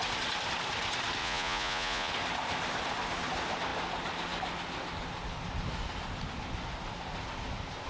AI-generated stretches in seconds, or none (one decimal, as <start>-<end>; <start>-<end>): 1.2-2.1